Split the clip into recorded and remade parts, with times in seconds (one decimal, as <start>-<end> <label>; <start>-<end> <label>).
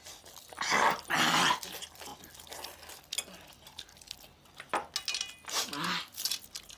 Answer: 0.0-6.8 recorded